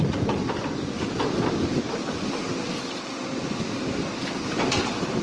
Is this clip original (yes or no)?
yes